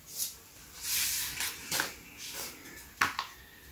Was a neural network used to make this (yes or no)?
no